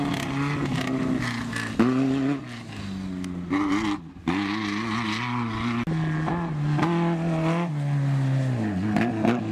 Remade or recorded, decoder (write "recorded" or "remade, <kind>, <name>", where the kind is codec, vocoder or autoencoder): recorded